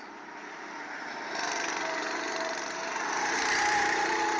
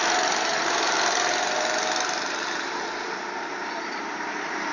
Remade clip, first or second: second